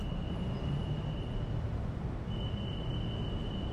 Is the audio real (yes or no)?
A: yes